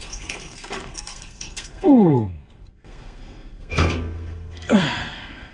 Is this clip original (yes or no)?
no